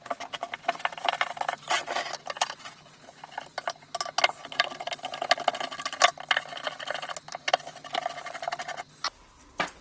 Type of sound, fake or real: real